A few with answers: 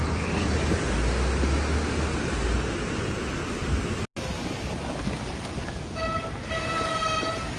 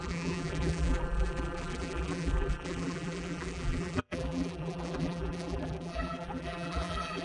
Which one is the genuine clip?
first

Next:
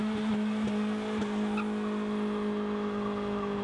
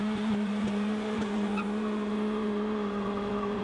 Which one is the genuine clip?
first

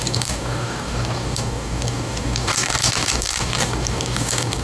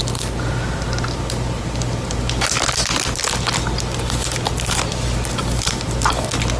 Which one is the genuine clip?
second